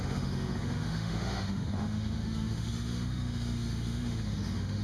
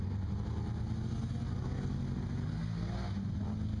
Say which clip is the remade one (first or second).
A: first